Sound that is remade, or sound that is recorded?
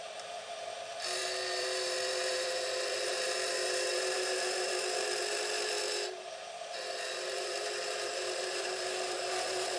remade